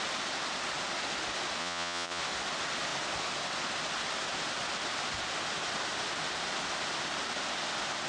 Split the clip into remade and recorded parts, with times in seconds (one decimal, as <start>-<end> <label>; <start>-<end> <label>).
0.0-1.6 recorded; 1.6-2.2 remade; 2.2-8.1 recorded